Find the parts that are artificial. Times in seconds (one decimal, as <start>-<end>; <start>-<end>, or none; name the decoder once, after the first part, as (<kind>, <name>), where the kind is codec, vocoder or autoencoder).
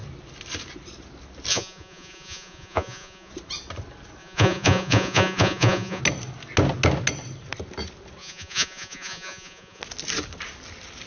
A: 1.5-3.3 (vocoder, Vocos); 4.2-6.0; 8.2-9.8